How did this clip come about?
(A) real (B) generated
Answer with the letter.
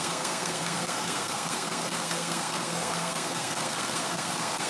B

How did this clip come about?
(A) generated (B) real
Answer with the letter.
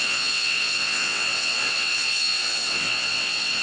A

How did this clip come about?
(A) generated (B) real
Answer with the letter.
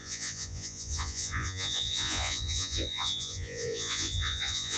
A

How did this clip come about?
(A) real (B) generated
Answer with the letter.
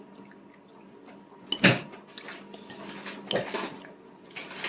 A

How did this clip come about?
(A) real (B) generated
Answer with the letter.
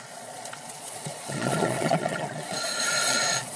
B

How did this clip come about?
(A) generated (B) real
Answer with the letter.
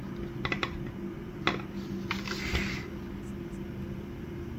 B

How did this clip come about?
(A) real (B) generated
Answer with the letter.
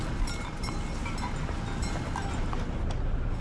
A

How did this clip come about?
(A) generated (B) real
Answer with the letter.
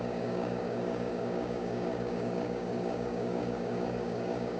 A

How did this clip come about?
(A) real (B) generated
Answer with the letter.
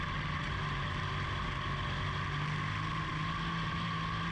A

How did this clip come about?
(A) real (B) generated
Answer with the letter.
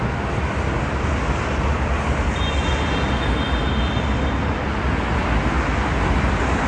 A